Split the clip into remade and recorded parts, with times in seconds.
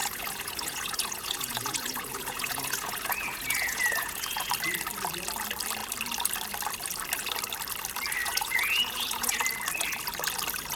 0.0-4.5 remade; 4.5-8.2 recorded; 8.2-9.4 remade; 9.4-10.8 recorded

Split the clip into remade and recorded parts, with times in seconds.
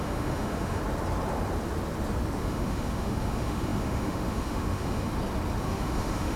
0.0-0.8 remade; 0.8-2.4 recorded; 2.4-5.1 remade; 5.1-5.6 recorded; 5.6-6.4 remade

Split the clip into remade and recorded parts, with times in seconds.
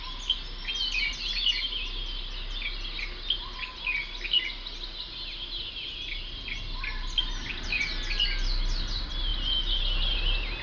0.0-10.6 recorded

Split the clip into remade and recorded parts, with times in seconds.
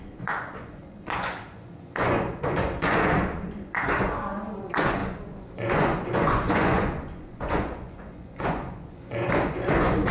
0.0-10.1 remade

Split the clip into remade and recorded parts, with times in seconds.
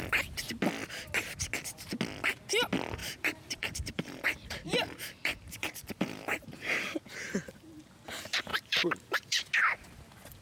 0.0-3.0 recorded; 3.0-7.9 remade; 7.9-8.5 recorded; 8.5-9.5 remade; 9.5-10.4 recorded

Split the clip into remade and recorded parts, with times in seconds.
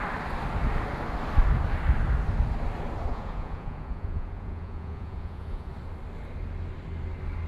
0.0-3.1 recorded; 3.1-5.7 remade; 5.7-7.5 recorded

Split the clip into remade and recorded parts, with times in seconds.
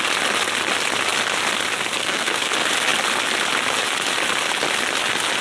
0.0-2.0 recorded; 2.0-2.5 remade; 2.5-5.4 recorded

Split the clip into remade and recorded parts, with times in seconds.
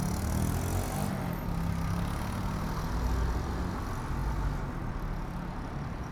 0.0-6.1 recorded